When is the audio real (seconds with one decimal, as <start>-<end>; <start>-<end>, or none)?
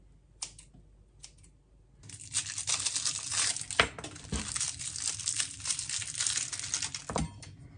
0.0-7.8